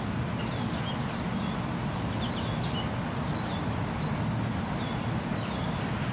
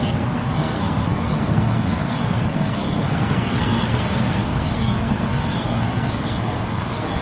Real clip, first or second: first